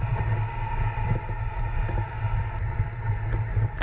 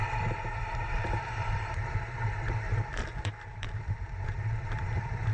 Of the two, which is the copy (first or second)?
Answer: second